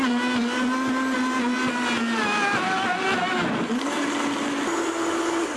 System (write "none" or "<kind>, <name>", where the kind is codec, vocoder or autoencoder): none